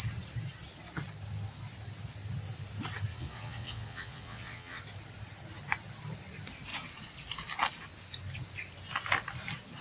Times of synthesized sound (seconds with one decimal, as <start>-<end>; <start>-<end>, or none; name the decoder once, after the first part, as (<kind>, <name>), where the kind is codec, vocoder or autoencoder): 3.1-4.8 (vocoder, WaveNeXt)